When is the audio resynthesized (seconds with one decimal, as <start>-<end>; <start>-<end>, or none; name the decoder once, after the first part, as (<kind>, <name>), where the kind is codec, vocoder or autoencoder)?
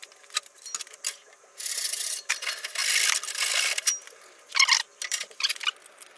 1.2-2.3 (vocoder, BigVGAN v2)